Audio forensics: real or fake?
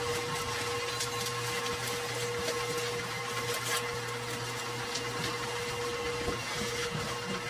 real